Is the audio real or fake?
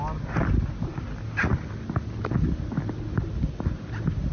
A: real